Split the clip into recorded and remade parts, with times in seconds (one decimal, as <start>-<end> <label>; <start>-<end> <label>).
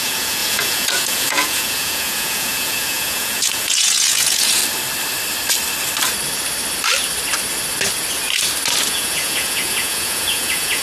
0.0-4.6 remade; 4.6-8.9 recorded; 8.9-10.8 remade